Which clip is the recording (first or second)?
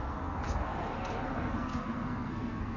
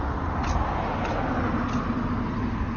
second